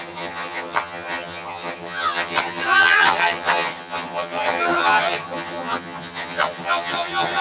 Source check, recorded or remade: remade